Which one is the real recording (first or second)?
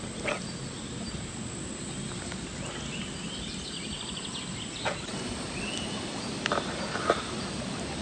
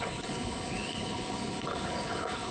first